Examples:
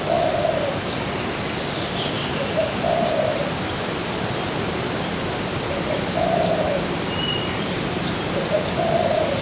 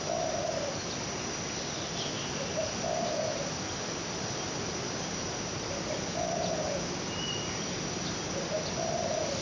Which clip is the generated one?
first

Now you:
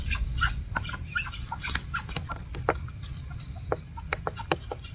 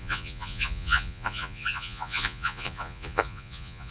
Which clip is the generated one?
second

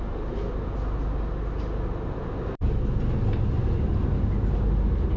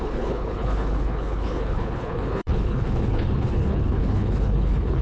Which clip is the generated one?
second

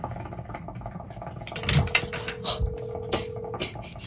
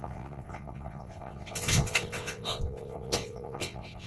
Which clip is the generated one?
second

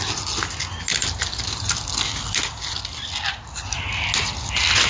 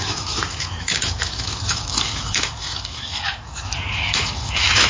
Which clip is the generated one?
second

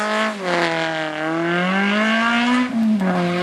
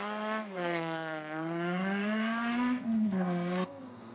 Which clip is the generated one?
second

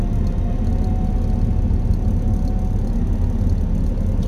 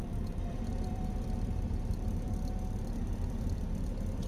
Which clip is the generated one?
second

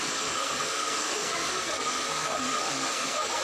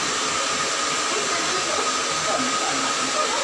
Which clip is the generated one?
first